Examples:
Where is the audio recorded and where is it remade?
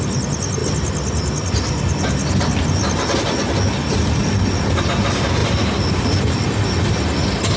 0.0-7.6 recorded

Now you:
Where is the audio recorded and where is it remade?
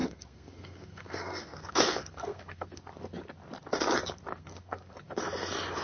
0.0-2.8 remade; 2.8-4.3 recorded; 4.3-4.9 remade; 4.9-5.8 recorded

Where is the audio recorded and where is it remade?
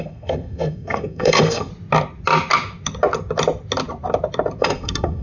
0.0-1.7 remade; 1.7-4.6 recorded; 4.6-5.2 remade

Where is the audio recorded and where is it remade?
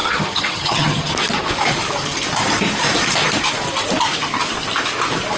0.0-1.1 remade; 1.1-5.4 recorded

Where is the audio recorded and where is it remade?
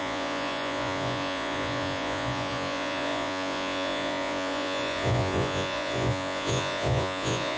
0.0-7.6 remade